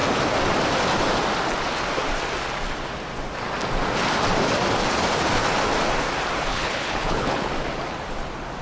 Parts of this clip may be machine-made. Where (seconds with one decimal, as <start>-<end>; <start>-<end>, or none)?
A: 6.5-7.5